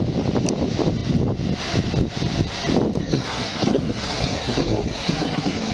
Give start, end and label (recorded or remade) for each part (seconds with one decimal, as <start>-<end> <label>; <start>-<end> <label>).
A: 0.0-3.0 recorded; 3.0-5.7 remade